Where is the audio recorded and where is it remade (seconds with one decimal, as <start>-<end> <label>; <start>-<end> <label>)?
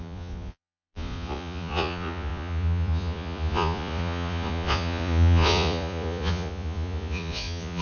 0.0-7.8 remade